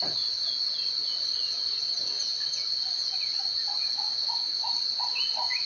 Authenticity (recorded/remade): recorded